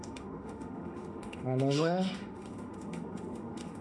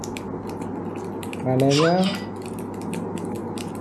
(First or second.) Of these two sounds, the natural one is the second